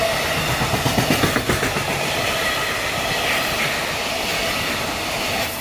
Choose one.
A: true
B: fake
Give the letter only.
A